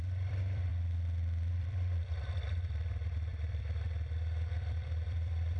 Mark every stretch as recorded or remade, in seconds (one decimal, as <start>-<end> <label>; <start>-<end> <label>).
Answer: 0.0-0.7 remade; 0.7-1.5 recorded; 1.5-5.6 remade